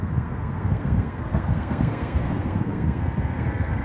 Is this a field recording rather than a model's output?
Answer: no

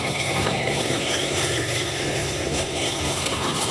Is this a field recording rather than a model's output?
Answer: no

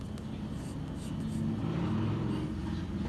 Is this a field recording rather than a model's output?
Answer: yes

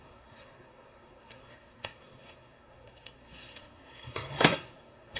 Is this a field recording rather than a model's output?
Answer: no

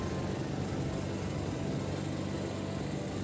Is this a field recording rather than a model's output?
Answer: yes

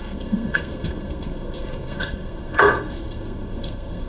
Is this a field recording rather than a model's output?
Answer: no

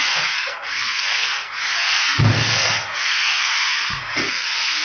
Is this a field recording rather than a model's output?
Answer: no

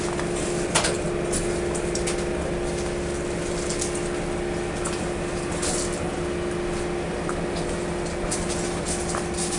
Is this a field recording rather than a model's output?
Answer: yes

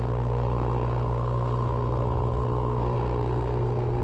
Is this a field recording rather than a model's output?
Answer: no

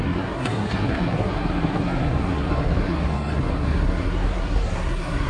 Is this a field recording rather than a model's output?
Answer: no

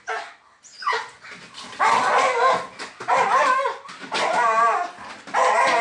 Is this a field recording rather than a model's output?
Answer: yes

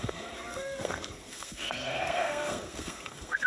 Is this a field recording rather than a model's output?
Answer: no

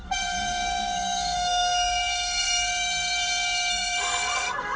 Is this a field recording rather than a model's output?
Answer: no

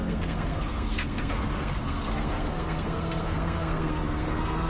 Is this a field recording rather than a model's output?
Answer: no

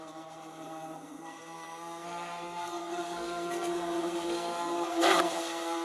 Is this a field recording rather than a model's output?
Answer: no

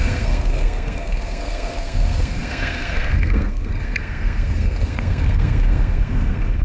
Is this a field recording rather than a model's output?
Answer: no